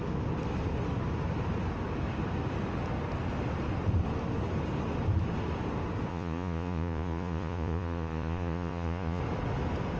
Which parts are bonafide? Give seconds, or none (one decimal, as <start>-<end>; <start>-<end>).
0.0-6.1; 9.2-10.0